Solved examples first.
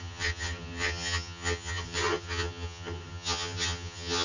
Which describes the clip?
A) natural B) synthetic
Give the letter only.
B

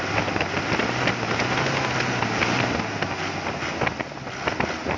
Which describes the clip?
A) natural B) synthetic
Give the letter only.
A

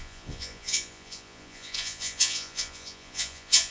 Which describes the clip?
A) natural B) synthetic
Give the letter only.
B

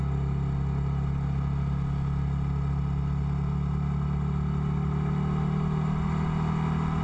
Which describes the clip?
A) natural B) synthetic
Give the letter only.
A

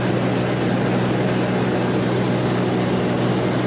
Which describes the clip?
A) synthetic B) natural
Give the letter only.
B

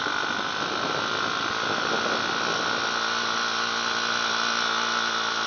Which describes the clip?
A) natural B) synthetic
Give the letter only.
A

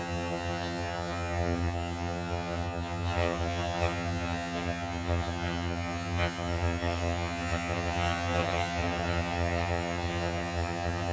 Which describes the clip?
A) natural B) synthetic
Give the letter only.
B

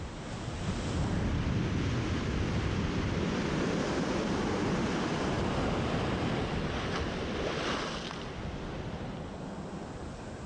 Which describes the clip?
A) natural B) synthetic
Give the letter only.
A